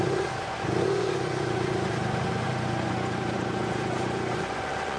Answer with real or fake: fake